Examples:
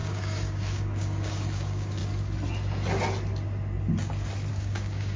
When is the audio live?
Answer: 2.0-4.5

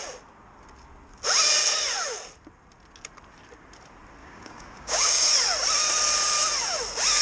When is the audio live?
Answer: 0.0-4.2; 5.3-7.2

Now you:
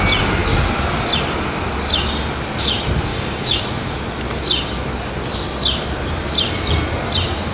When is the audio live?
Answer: 0.0-3.1; 3.6-7.5